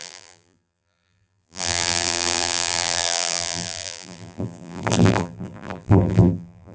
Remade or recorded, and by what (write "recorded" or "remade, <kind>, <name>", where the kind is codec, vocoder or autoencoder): remade, vocoder, BigVGAN v2